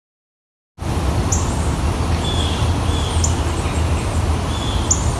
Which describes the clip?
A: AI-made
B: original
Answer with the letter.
B